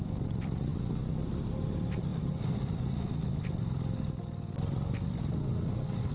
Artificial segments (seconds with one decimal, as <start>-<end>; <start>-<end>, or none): none